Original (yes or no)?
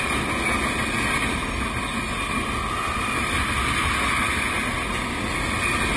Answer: yes